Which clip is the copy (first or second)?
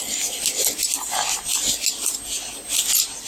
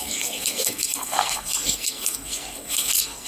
second